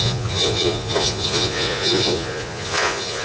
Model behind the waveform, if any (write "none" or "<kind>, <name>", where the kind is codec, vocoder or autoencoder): vocoder, Vocos